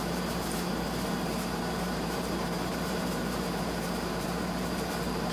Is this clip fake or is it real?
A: fake